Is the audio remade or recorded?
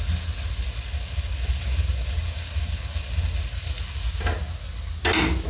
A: recorded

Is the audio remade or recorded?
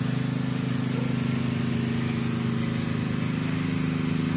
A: recorded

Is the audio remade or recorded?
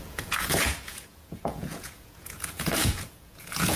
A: remade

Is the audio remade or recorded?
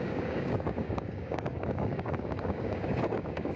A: remade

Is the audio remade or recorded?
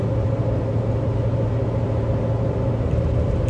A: recorded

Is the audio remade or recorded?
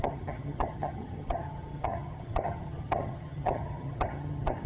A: remade